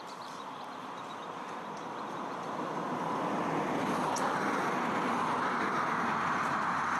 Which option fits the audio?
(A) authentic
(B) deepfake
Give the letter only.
B